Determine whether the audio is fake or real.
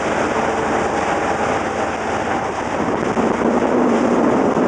real